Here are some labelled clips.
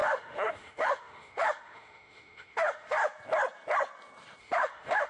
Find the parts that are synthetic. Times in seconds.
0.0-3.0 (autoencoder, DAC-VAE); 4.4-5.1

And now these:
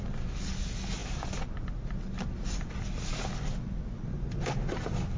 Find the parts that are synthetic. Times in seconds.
none

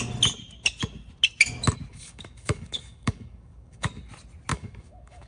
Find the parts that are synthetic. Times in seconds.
1.9-4.0 (codec, DAC); 4.5-5.3

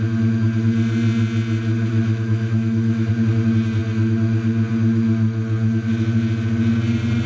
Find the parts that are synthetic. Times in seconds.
1.9-3.1 (autoencoder, DAC-VAE)

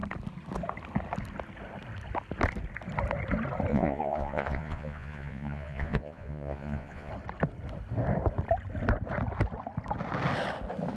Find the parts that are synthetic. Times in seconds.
3.7-7.1 (vocoder, Vocos)